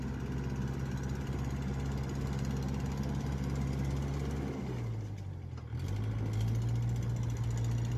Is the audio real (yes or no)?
yes